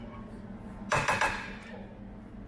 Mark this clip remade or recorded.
recorded